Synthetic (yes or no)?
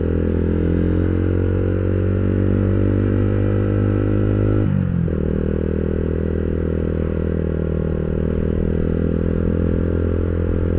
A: no